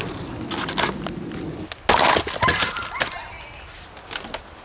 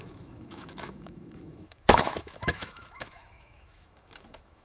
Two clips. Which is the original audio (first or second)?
first